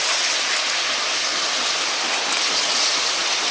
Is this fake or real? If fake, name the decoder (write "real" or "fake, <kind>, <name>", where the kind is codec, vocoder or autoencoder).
real